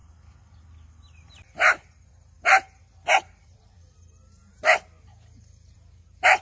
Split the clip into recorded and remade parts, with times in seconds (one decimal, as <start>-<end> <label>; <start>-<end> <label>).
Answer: 0.0-3.1 recorded; 3.1-4.4 remade; 4.4-5.3 recorded; 5.3-6.4 remade